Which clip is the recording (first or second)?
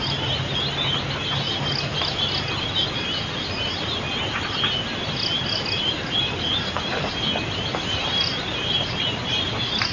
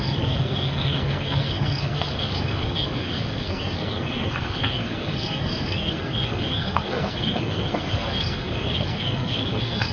first